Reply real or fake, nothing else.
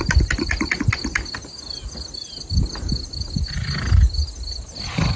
real